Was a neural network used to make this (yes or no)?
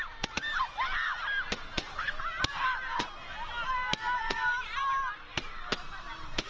no